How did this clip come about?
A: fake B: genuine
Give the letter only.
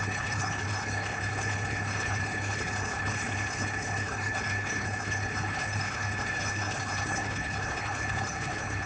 A